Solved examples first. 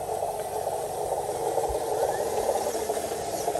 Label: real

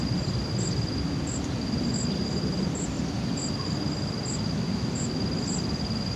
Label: real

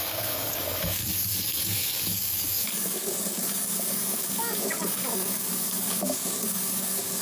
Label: fake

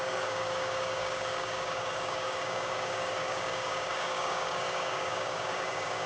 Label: fake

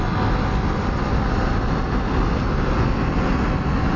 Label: real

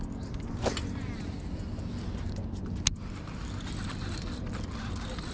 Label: real